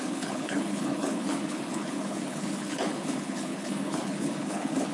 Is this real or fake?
fake